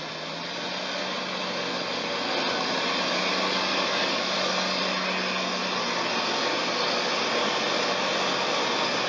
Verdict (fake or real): real